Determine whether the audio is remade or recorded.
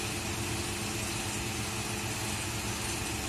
recorded